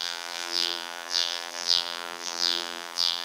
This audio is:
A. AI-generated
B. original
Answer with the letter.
A